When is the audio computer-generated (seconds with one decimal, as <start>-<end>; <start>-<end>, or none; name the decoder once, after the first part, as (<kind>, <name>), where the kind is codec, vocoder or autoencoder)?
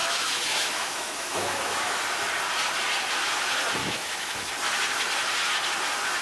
0.0-2.0 (autoencoder, DAC-VAE); 3.8-4.5